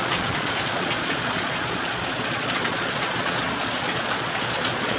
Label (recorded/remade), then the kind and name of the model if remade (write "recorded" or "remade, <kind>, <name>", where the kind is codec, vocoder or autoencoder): remade, vocoder, Vocos